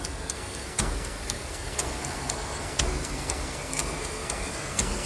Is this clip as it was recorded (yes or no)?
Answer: no